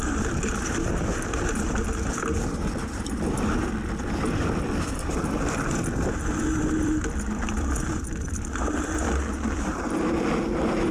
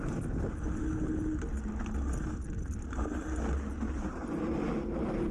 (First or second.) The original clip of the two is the second